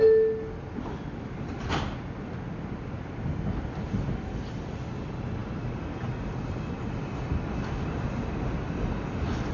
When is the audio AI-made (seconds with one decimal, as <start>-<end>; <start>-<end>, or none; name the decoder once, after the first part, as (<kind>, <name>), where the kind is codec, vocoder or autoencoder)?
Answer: none